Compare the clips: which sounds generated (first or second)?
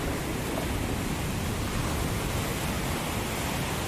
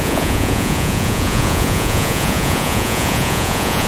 second